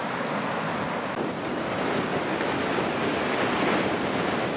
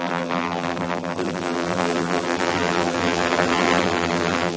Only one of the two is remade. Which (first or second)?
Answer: second